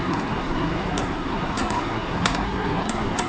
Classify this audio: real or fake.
fake